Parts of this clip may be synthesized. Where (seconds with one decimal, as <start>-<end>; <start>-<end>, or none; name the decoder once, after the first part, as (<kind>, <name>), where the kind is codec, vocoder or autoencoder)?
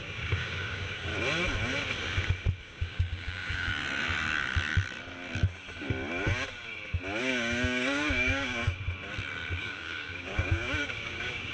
0.0-1.1 (codec, DAC); 2.6-3.7; 7.2-8.6; 9.6-11.5